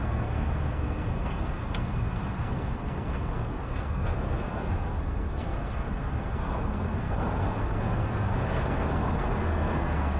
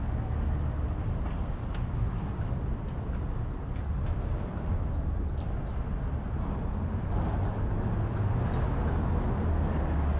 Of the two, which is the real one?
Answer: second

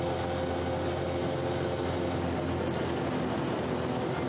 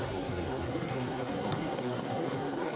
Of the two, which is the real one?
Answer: first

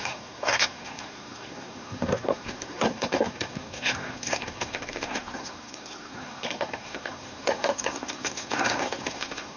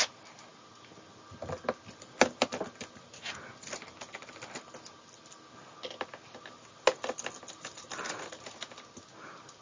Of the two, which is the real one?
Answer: second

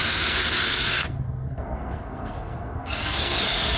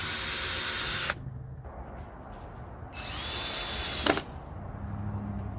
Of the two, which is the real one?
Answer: second